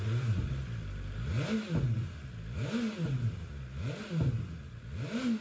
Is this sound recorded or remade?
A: recorded